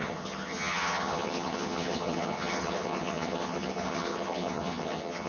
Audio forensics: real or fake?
fake